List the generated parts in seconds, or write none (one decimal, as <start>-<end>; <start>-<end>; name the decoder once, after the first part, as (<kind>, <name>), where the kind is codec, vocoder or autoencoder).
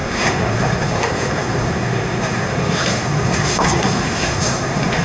0.0-5.0 (codec, SNAC)